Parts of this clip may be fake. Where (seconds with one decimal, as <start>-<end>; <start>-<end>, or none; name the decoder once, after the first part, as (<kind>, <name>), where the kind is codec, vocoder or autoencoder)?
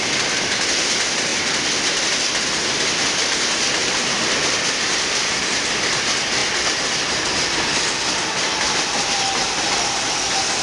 3.8-5.7 (vocoder, BigVGAN v2)